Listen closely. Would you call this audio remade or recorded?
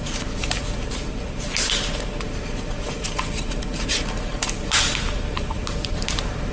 remade